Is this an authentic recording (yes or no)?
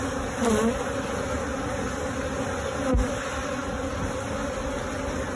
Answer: yes